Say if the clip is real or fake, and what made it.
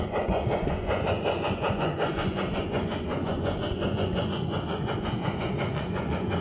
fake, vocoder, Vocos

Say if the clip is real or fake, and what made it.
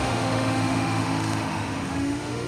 fake, autoencoder, DAC-VAE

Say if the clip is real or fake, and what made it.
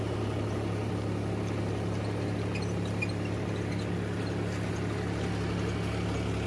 real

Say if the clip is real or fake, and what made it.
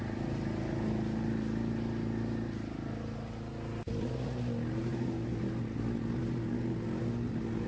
real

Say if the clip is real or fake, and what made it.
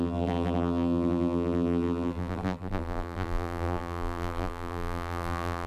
fake, vocoder, BigVGAN v2